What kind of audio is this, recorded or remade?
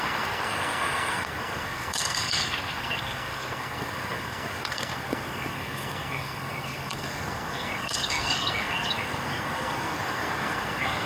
remade